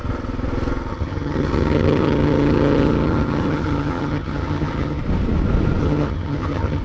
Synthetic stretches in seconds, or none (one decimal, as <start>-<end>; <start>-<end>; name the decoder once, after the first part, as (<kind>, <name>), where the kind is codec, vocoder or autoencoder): 0.9-5.0 (vocoder, HiFi-GAN); 5.8-6.8